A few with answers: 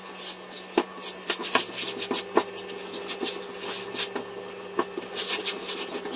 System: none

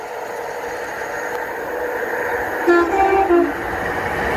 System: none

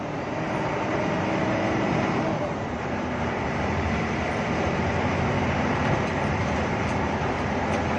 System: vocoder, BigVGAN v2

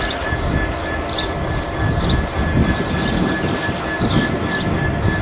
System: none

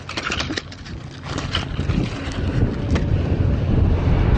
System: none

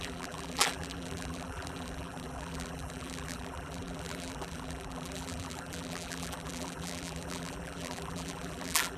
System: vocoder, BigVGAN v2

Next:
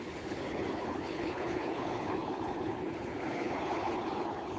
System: codec, HILCodec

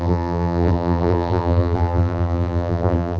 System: vocoder, BigVGAN v2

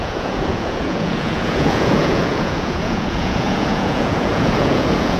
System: vocoder, Vocos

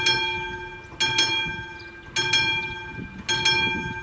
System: none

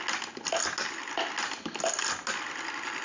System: none